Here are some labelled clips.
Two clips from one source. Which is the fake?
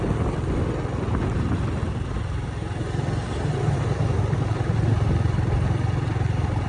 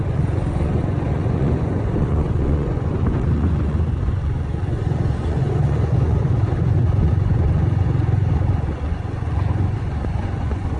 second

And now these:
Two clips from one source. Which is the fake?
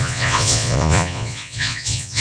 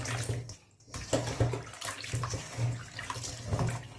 first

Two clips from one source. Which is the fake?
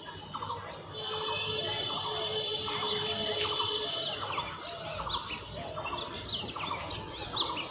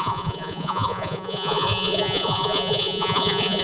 second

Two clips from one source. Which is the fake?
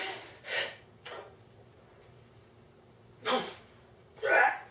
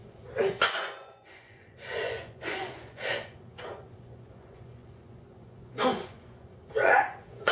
second